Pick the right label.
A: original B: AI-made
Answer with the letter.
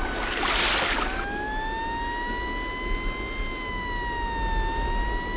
A